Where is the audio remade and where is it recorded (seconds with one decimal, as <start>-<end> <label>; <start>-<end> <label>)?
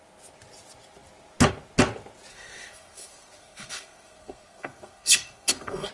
0.0-2.3 recorded; 2.3-5.9 remade